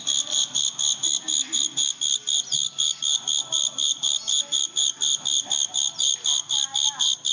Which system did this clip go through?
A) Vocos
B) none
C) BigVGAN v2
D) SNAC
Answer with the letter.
B